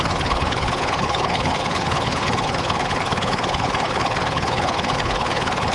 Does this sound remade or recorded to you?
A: remade